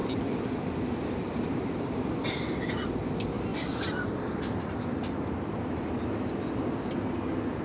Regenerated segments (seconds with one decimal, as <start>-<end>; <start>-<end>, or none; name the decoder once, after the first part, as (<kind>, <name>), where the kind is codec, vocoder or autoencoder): 0.0-3.1 (vocoder, BigVGAN v2); 3.5-4.1